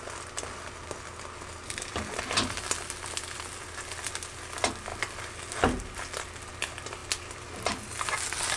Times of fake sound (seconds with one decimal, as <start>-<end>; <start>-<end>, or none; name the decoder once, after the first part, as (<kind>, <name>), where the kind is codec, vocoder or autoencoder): none